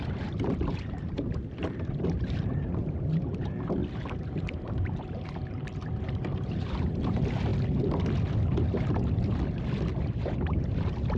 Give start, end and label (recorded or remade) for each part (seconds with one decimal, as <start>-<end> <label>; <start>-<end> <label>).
0.0-3.8 remade; 3.8-4.4 recorded; 4.4-7.5 remade; 7.5-10.0 recorded; 10.0-11.2 remade